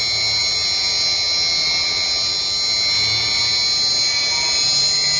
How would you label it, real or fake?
real